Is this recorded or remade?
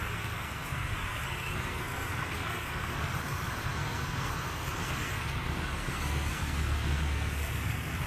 remade